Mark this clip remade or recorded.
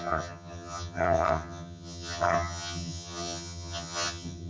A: remade